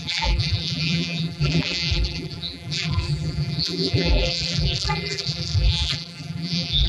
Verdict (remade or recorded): remade